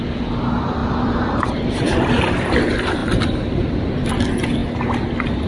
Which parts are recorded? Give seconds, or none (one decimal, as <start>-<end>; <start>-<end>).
0.0-0.8; 2.2-3.0; 4.1-5.5